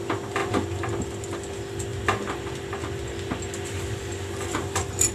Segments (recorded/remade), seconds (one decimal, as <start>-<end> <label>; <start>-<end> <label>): 0.0-5.1 recorded